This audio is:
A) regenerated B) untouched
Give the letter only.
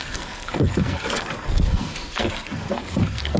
A